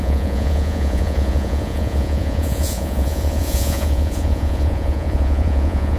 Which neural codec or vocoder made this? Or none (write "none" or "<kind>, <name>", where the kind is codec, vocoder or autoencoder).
vocoder, Vocos